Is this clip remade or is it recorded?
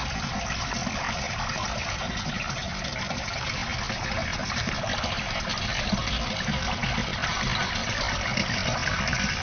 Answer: remade